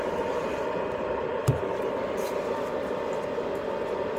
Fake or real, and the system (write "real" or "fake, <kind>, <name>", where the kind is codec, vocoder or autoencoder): real